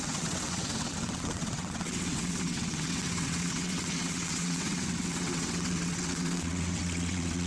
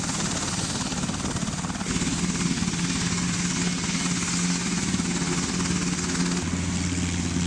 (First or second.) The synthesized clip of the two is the first